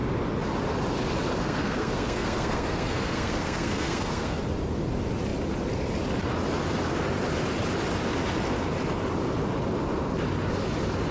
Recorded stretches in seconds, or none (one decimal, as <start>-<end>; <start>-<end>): 0.0-1.4; 4.4-11.1